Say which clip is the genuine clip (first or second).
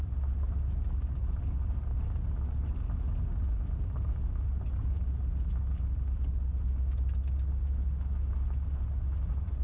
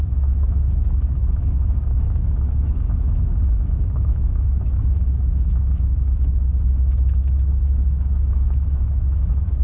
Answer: first